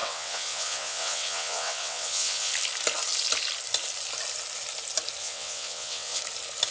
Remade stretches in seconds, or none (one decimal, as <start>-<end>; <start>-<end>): 0.0-2.5; 5.2-6.2